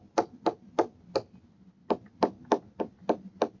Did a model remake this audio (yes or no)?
no